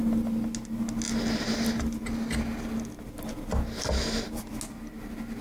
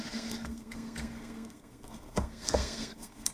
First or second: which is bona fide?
first